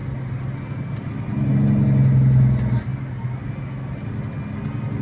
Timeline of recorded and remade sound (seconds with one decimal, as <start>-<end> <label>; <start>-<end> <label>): 0.0-5.0 recorded

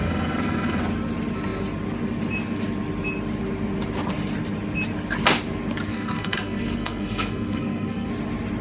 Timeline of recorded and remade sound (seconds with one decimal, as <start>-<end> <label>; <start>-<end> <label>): 0.0-0.8 remade; 0.8-5.9 recorded; 5.9-8.1 remade; 8.1-8.6 recorded

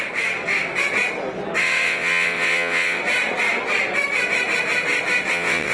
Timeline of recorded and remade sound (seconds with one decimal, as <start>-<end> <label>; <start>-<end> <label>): 0.0-1.6 recorded; 1.6-3.0 remade; 3.0-5.3 recorded; 5.3-5.7 remade

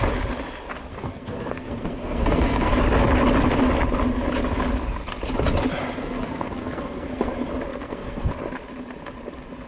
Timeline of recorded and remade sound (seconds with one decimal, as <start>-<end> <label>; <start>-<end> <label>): 0.0-0.9 recorded; 0.9-2.7 remade; 2.7-6.0 recorded; 6.0-7.3 remade; 7.3-7.7 recorded; 7.7-8.3 remade; 8.3-9.7 recorded

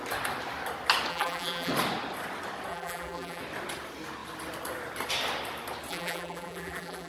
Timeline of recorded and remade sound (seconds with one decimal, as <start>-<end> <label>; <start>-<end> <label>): 0.0-1.1 recorded; 1.1-1.7 remade; 1.7-2.7 recorded; 2.7-3.4 remade; 3.4-5.9 recorded; 5.9-7.1 remade

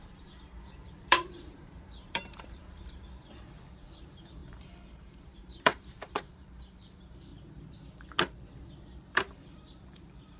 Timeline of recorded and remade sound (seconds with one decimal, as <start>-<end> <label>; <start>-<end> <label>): 0.0-7.3 remade; 7.3-9.1 recorded; 9.1-10.4 remade

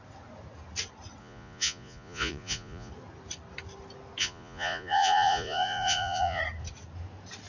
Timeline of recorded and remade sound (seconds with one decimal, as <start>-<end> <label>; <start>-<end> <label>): 0.0-1.2 recorded; 1.2-2.9 remade; 2.9-4.2 recorded; 4.2-6.4 remade; 6.4-7.5 recorded

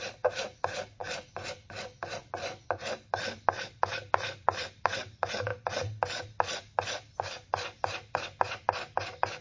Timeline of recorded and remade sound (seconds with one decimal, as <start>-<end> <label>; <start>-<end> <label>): 0.0-1.0 remade; 1.0-5.0 recorded; 5.0-5.5 remade; 5.5-9.4 recorded